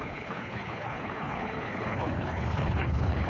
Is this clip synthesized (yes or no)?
yes